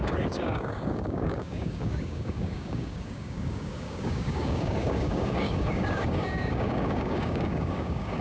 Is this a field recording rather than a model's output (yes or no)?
no